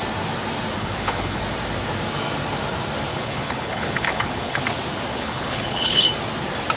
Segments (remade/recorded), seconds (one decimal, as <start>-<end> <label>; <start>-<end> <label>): 0.0-0.8 recorded; 0.8-1.4 remade; 1.4-3.1 recorded; 3.1-4.6 remade; 4.6-5.1 recorded; 5.1-6.1 remade; 6.1-6.8 recorded